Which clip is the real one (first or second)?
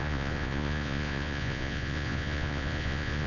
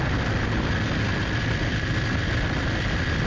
second